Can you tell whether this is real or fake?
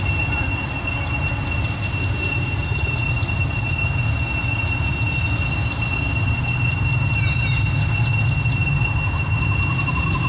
real